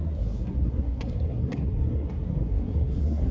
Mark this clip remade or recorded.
remade